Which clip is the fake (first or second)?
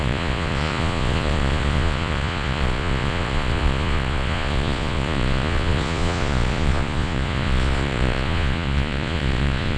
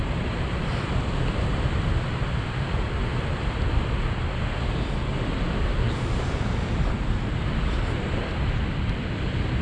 first